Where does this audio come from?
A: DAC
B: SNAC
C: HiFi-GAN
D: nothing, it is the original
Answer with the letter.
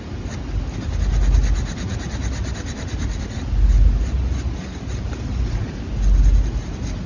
D